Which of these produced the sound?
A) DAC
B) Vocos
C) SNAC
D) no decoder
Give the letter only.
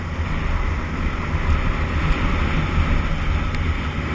D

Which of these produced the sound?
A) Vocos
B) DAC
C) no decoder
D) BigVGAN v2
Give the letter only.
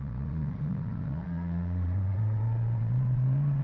A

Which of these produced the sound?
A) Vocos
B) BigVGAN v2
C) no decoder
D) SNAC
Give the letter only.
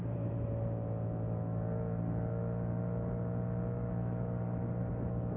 C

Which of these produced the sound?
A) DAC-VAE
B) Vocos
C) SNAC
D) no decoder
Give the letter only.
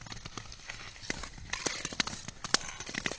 D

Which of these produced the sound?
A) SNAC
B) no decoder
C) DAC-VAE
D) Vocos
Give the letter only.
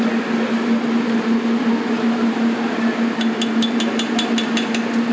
B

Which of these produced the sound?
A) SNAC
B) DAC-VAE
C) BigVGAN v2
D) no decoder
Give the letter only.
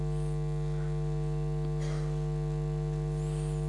D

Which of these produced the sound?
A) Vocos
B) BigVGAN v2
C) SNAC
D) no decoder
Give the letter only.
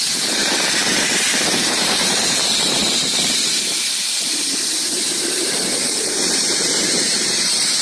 B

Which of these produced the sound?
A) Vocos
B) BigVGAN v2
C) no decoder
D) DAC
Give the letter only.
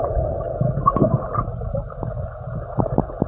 C